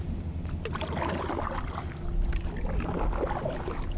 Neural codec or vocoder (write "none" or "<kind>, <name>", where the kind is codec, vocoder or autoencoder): none